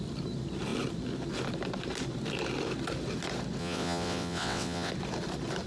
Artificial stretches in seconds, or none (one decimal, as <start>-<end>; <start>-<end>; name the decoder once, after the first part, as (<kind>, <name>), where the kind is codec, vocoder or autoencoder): 3.6-4.9 (vocoder, WaveNeXt)

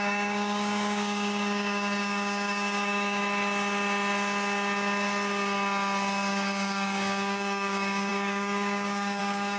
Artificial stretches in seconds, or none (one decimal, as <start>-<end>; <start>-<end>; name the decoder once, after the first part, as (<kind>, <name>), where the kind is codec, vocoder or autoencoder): 0.0-3.2 (codec, DAC); 6.3-9.6

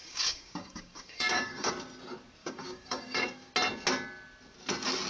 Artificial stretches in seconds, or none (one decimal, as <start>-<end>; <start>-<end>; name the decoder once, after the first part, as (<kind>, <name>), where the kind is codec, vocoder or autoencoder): 0.0-1.7 (codec, DAC); 2.4-3.5

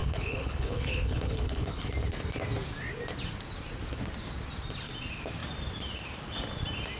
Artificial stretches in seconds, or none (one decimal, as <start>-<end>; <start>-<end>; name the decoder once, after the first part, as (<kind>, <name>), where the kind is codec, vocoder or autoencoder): 0.0-1.9 (codec, HILCodec)

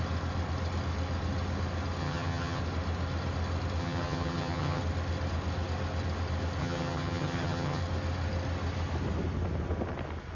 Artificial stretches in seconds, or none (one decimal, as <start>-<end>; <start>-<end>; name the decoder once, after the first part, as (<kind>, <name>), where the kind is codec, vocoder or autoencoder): 2.0-2.6 (vocoder, HiFi-GAN); 3.8-4.8; 6.6-7.8